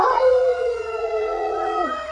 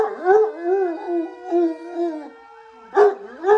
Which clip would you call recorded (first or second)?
second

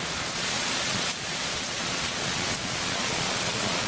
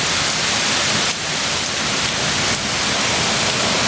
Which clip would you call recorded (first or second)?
second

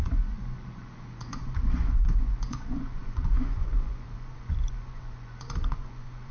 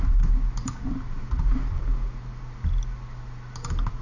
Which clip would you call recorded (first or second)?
second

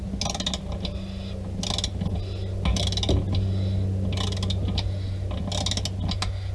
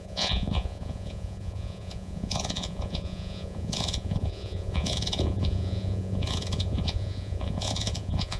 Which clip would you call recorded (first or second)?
first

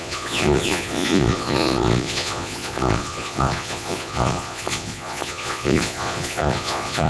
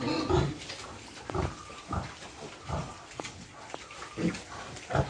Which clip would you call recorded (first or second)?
second